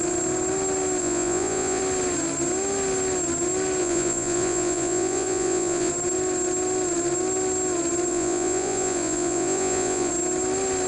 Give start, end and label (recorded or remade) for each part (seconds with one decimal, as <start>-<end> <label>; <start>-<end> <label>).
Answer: 0.0-1.0 recorded; 1.0-1.8 remade; 1.8-3.8 recorded; 3.8-5.9 remade; 5.9-8.1 recorded; 8.1-10.1 remade; 10.1-10.9 recorded